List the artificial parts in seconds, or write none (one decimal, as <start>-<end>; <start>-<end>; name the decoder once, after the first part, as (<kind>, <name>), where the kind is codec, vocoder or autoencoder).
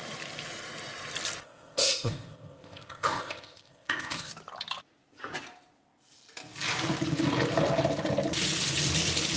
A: 1.4-4.3 (codec, ZipCodec)